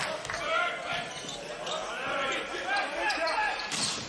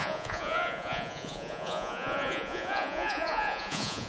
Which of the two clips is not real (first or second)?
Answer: second